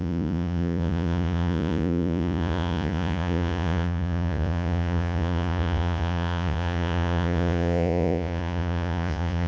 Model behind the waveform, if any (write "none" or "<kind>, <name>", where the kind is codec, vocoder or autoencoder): vocoder, Vocos